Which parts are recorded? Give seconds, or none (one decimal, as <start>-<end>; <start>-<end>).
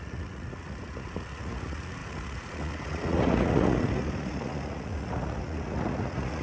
none